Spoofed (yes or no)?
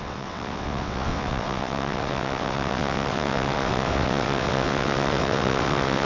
yes